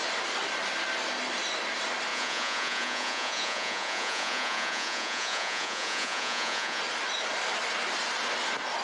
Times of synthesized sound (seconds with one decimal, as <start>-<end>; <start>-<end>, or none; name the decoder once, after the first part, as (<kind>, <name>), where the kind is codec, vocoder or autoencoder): 2.1-6.8 (vocoder, Vocos)